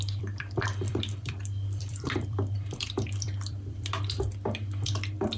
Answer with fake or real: fake